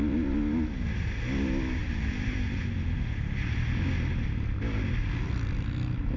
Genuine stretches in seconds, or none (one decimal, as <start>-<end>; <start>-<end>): 0.0-6.2

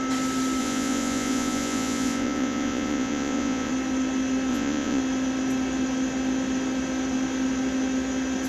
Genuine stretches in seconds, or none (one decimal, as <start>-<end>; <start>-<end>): 0.0-0.6; 3.7-4.5; 5.0-8.5

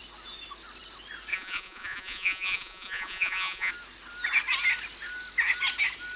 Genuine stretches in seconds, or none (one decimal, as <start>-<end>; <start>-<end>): 0.0-1.3; 3.7-6.2

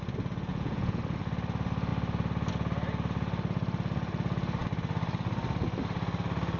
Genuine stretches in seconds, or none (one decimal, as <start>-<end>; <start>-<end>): 0.0-0.5; 1.0-6.6

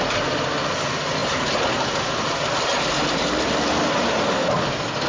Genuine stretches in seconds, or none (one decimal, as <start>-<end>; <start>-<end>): 0.0-5.1